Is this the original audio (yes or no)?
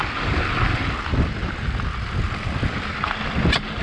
yes